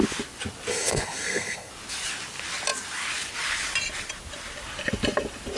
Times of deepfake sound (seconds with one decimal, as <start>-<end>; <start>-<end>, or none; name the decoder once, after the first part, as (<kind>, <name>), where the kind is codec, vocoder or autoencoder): 0.7-1.7 (codec, SNAC)